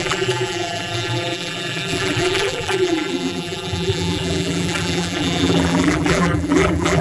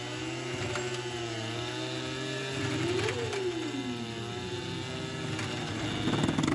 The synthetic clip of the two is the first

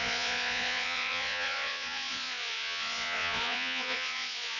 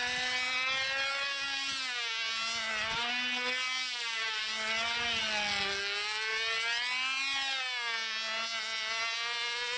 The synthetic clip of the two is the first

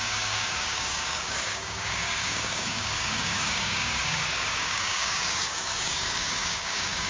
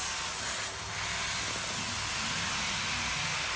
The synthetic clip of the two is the first